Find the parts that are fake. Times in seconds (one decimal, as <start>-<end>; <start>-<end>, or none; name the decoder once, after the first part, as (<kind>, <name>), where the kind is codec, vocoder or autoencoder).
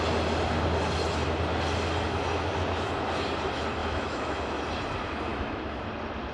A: 3.8-4.6 (autoencoder, DAC-VAE); 5.3-5.8